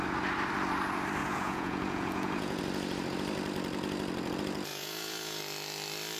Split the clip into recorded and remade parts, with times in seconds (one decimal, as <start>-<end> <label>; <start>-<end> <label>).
0.0-1.2 recorded; 1.2-2.6 remade; 2.6-4.7 recorded; 4.7-5.4 remade; 5.4-6.2 recorded